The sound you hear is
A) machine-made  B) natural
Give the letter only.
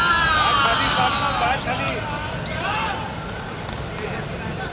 B